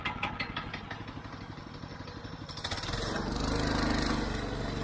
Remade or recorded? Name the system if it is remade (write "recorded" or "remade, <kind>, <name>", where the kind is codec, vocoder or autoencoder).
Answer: recorded